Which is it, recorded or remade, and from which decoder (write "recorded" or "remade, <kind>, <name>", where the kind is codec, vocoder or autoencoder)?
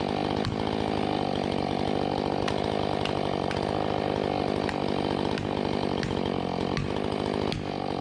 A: recorded